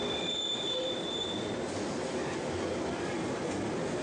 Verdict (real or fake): real